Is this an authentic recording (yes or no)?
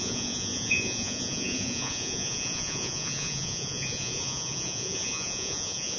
no